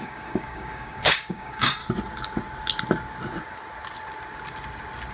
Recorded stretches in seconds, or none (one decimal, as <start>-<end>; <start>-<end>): 1.8-5.1